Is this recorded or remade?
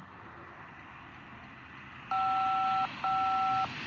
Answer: recorded